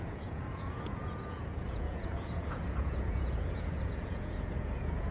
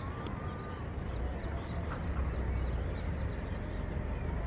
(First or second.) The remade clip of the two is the first